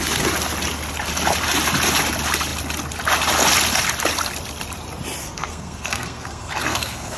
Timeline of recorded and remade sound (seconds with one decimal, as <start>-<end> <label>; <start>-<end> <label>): 0.0-5.2 recorded; 5.2-7.2 remade